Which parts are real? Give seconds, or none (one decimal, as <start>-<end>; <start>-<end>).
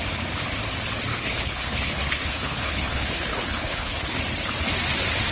0.0-1.1; 4.2-5.3